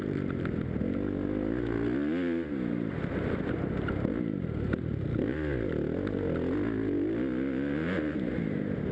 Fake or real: real